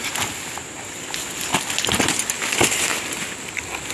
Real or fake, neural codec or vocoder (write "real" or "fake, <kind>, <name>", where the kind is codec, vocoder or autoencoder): real